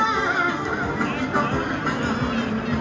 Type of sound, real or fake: real